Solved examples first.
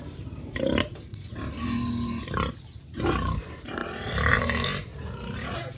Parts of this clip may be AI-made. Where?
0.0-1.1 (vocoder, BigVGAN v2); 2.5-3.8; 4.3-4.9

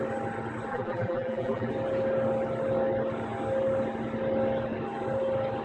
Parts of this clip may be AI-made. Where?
0.7-1.7 (vocoder, BigVGAN v2)

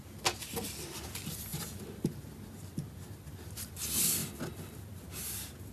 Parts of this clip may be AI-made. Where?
none

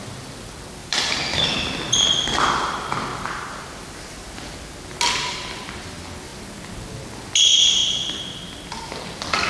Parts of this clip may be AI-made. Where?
0.8-1.7 (vocoder, BigVGAN v2); 3.1-3.8